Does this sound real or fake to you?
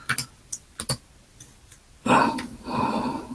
real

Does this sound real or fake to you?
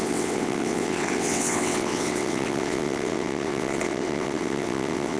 fake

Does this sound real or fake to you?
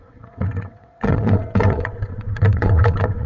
fake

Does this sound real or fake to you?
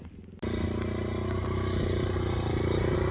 real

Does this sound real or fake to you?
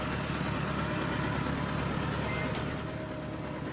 real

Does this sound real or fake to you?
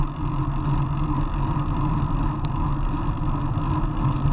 real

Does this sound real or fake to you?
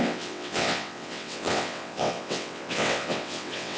fake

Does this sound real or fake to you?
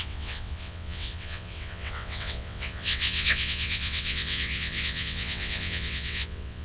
fake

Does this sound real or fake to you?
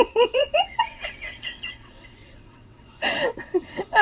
fake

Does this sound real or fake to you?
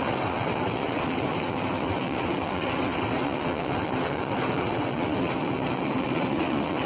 fake